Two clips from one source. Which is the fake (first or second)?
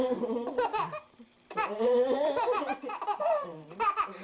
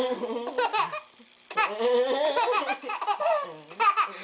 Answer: first